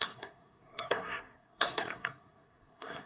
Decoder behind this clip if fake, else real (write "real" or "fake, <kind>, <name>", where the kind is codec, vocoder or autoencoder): fake, codec, SNAC